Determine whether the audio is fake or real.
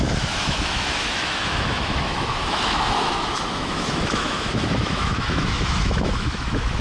fake